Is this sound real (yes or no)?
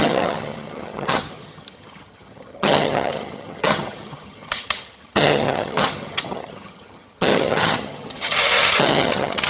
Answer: no